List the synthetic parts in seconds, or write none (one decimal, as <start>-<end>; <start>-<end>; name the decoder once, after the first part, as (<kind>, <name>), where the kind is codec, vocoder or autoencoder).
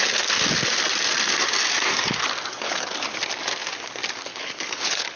2.5-3.0 (codec, HILCodec); 4.3-5.2